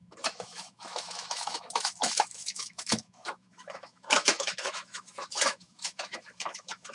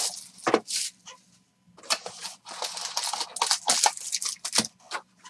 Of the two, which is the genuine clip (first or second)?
second